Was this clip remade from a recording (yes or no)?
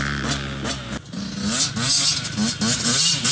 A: no